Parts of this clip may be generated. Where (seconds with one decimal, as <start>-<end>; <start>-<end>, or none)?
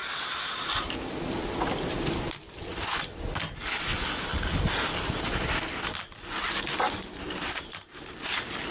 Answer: 0.0-0.8; 4.3-6.4